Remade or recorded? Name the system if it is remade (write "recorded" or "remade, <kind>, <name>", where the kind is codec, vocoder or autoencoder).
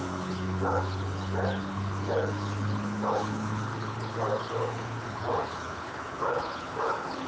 remade, codec, HILCodec